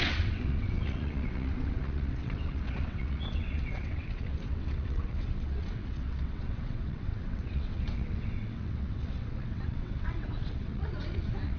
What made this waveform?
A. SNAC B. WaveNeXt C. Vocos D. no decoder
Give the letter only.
B